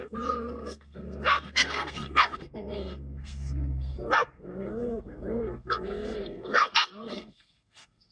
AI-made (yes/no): yes